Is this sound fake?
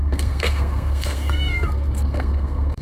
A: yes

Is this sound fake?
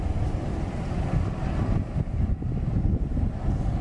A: no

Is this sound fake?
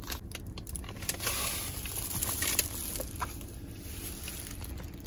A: no